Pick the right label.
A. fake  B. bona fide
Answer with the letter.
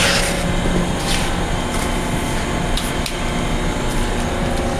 B